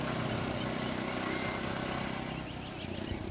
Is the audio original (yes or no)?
yes